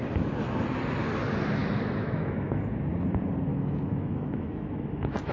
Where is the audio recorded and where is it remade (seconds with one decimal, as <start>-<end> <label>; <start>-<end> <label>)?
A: 0.0-1.6 recorded; 1.6-2.8 remade; 2.8-3.5 recorded; 3.5-5.3 remade